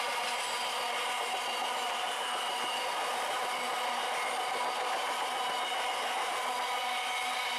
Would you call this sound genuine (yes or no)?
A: yes